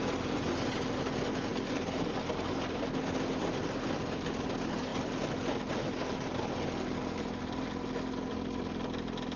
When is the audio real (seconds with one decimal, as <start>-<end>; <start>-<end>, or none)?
0.0-9.4